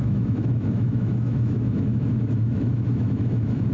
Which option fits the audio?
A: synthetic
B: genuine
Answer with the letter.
A